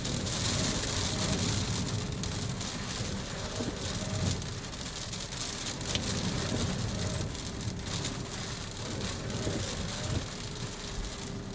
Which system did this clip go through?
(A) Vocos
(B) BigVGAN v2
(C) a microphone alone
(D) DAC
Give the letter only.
C